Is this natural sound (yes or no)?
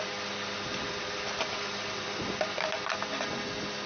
yes